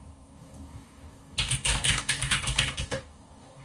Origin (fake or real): fake